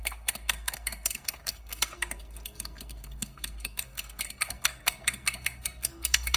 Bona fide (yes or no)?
no